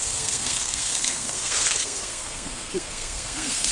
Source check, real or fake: fake